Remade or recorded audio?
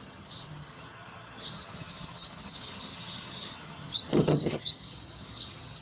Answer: remade